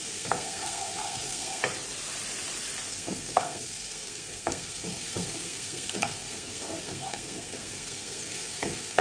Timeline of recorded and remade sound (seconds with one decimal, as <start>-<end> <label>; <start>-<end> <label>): 0.0-1.6 remade; 1.6-2.9 recorded; 2.9-9.0 remade